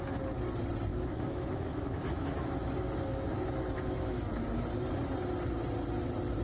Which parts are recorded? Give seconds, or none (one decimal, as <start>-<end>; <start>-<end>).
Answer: 0.0-0.9; 4.4-6.4